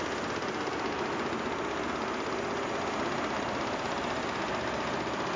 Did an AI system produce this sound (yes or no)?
no